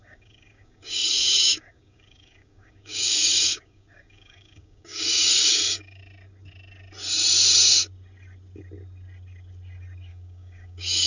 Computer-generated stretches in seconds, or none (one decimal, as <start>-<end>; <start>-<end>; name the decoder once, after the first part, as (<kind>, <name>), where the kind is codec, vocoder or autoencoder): 0.0-6.0 (codec, DAC); 10.1-11.1